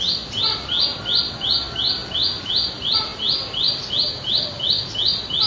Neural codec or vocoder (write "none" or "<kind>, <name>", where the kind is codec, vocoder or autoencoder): none